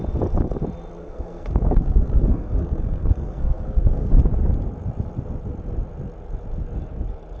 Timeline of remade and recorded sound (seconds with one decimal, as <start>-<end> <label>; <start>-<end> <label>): 0.0-1.0 recorded; 1.0-4.1 remade; 4.1-7.4 recorded